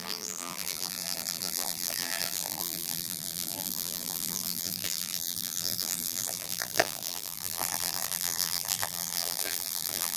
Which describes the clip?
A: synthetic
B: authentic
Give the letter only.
A